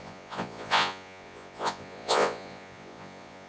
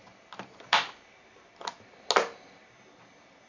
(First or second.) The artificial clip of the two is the first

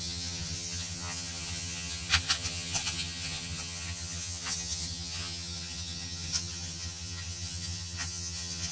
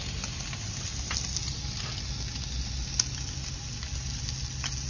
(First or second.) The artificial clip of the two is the first